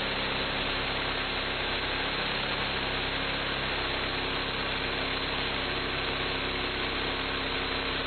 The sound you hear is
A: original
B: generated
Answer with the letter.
A